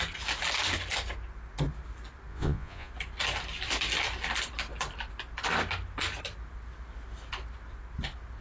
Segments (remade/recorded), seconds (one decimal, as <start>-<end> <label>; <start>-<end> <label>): 0.0-2.3 recorded; 2.3-2.9 remade; 2.9-8.4 recorded